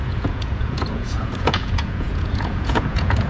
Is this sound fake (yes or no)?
yes